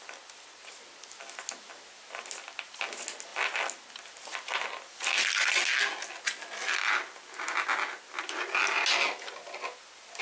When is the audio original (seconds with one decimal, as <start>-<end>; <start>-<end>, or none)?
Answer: 0.0-10.2